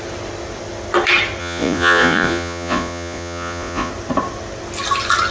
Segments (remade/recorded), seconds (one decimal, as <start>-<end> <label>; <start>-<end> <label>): 0.0-1.4 recorded; 1.4-3.9 remade; 3.9-5.3 recorded